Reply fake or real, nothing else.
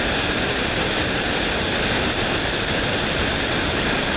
real